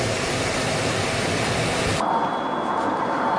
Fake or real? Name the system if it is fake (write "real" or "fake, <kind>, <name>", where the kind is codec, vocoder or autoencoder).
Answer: fake, vocoder, BigVGAN v2